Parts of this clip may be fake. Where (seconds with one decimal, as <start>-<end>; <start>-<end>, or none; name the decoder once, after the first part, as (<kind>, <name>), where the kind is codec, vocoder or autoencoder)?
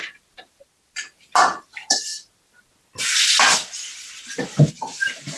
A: none